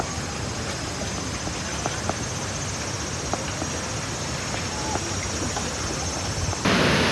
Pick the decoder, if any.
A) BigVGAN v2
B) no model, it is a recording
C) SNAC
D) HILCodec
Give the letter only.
B